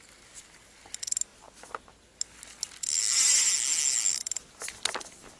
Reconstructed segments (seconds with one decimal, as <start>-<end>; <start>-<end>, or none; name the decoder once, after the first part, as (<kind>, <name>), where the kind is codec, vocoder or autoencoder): none